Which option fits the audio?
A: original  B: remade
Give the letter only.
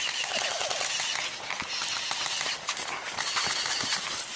A